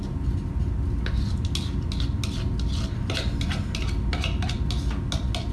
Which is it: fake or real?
real